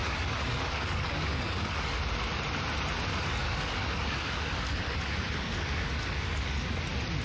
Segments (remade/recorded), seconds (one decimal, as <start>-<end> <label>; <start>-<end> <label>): 0.0-2.0 remade; 2.0-3.1 recorded; 3.1-6.8 remade; 6.8-7.2 recorded